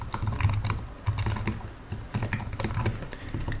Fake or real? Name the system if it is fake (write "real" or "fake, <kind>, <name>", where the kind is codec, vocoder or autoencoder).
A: real